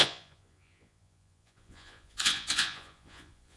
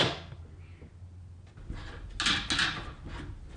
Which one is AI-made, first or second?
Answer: first